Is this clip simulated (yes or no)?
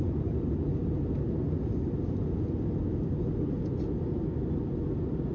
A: no